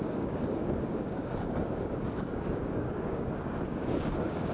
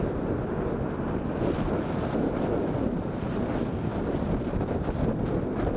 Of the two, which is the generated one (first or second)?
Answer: first